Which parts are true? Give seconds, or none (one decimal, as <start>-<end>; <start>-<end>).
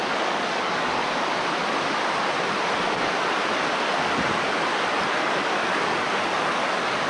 1.0-5.2